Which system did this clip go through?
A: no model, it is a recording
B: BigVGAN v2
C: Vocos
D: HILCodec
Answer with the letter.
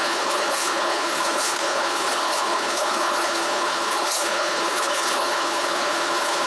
D